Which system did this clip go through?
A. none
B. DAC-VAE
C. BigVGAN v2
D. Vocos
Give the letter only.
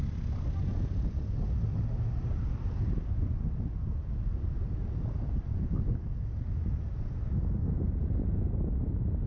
A